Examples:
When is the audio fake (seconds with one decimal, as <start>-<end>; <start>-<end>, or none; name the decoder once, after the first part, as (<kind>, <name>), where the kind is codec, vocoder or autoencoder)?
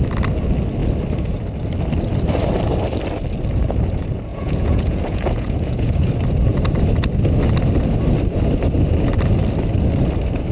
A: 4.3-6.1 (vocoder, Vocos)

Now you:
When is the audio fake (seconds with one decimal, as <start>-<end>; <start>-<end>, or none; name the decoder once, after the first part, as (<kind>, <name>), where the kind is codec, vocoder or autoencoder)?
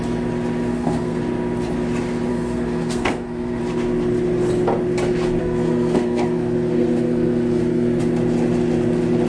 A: 0.7-1.2 (codec, SNAC); 2.3-3.6; 5.4-8.0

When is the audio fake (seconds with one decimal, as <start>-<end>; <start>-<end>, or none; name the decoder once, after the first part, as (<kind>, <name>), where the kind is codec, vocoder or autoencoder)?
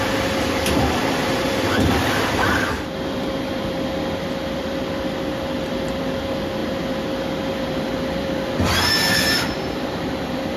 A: 0.0-10.6 (vocoder, BigVGAN v2)